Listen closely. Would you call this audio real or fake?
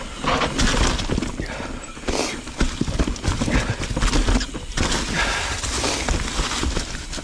real